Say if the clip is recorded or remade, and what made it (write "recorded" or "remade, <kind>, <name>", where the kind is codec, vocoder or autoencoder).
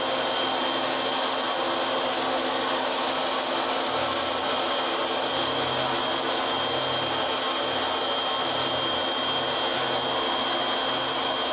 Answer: recorded